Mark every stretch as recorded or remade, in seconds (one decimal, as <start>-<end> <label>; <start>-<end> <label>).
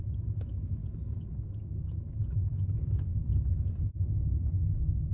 0.0-0.8 remade; 0.8-1.4 recorded; 1.4-3.1 remade; 3.1-4.3 recorded; 4.3-5.1 remade